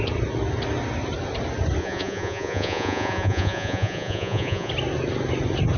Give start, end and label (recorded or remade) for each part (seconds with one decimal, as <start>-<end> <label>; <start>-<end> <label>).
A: 0.0-1.8 recorded; 1.8-4.7 remade; 4.7-5.8 recorded